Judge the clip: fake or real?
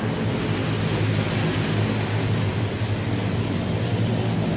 real